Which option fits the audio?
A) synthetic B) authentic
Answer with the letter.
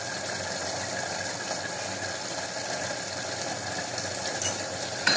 B